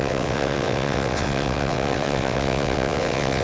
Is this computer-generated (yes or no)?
yes